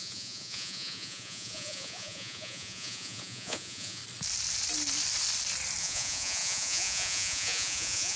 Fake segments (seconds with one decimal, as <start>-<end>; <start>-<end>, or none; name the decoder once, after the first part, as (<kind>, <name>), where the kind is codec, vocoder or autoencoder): 0.0-4.0 (vocoder, Vocos); 5.8-8.2